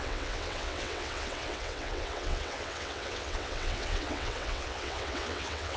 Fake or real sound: fake